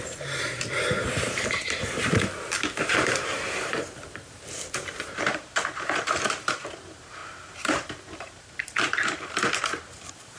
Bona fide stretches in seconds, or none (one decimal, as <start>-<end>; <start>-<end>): none